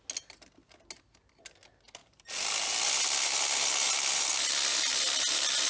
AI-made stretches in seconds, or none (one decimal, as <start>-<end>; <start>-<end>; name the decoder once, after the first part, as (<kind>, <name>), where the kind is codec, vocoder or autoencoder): none